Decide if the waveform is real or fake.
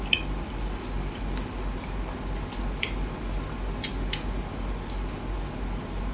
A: real